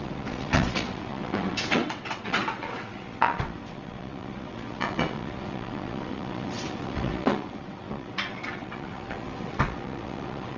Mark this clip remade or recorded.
remade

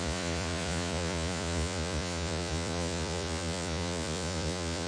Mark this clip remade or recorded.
remade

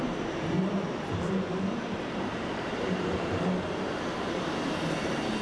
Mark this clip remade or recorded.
remade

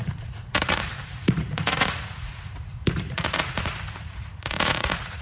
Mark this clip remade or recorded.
remade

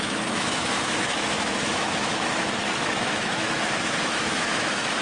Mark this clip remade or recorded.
remade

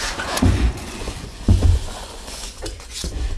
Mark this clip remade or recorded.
remade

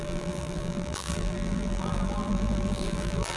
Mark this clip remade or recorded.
remade